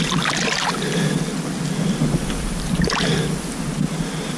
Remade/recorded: recorded